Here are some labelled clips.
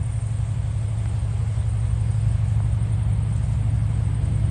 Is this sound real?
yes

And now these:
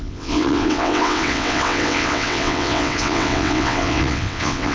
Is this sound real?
no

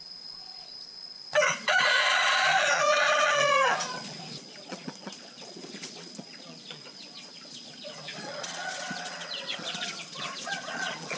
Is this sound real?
no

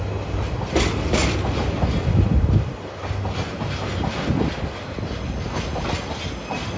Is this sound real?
yes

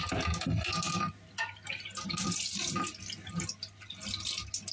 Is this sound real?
yes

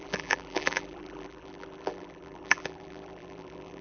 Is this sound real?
no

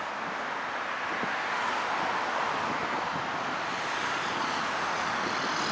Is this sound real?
yes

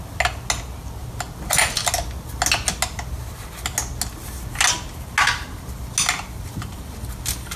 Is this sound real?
yes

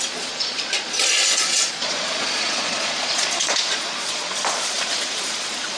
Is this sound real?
no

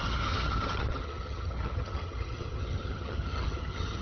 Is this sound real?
no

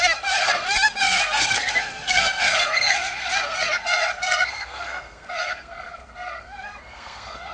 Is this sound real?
no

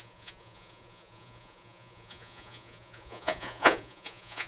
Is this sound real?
no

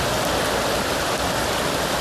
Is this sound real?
yes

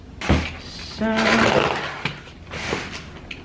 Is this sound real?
yes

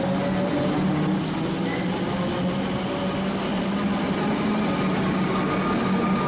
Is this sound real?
yes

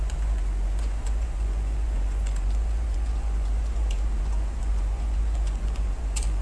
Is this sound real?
no